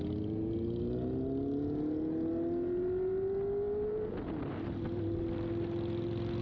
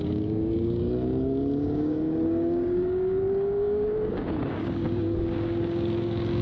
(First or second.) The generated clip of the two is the second